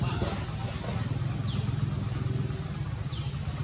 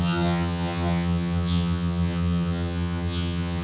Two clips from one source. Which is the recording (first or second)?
first